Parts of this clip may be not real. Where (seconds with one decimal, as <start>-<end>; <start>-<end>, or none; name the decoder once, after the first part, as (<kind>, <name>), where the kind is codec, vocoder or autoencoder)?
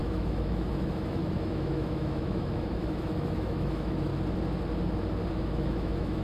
0.0-4.1 (autoencoder, DAC-VAE); 5.3-6.2